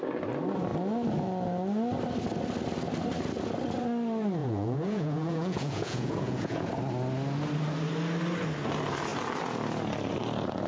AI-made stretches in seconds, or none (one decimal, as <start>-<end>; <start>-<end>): 4.4-6.7

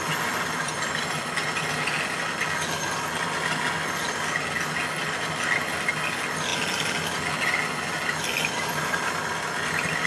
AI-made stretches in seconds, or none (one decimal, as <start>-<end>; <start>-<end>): none

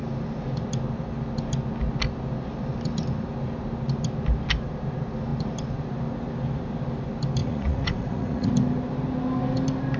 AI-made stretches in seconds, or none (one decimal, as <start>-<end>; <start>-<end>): 7.4-8.5

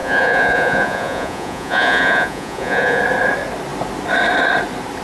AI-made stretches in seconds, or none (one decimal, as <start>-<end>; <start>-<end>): 0.0-3.0

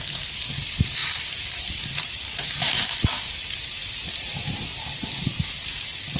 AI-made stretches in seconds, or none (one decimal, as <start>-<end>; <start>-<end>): none